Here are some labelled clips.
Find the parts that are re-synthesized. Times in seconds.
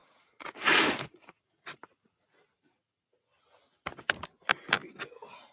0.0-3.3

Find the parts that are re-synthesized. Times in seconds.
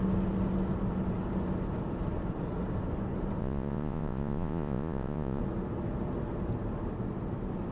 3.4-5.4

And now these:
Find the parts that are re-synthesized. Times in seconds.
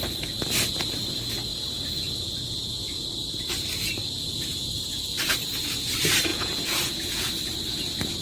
6.3-7.3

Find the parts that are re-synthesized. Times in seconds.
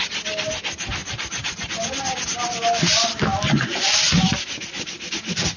none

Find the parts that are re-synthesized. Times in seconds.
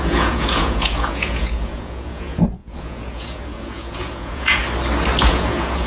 0.0-4.6; 5.2-5.9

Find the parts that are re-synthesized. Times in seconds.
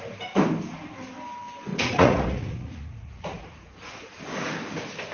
1.7-4.3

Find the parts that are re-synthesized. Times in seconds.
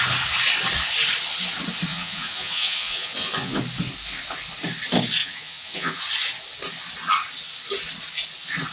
1.9-3.6; 5.2-6.0